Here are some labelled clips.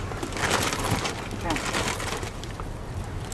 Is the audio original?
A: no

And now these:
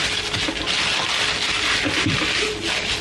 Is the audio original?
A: yes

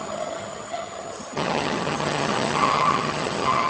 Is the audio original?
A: no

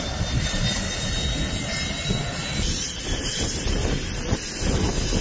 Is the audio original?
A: yes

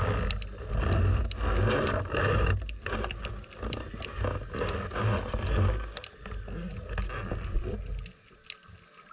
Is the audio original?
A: yes